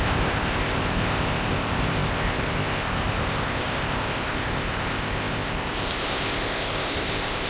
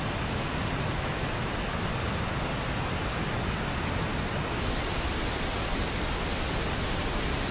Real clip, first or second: second